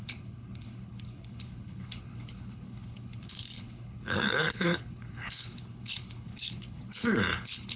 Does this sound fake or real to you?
fake